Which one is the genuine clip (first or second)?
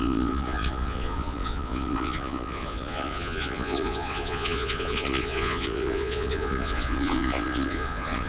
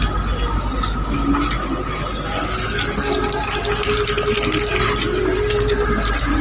second